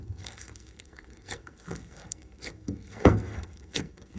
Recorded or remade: remade